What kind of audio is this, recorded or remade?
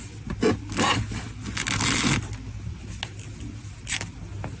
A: recorded